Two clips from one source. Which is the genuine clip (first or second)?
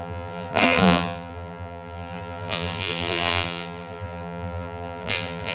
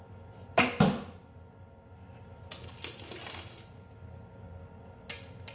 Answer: second